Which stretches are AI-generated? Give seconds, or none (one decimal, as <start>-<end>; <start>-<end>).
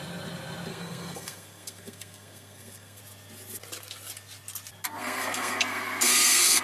0.7-3.0; 5.0-6.6